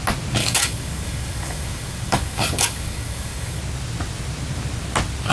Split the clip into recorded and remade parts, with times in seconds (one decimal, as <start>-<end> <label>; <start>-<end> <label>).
0.0-0.4 recorded; 0.4-3.6 remade; 3.6-5.3 recorded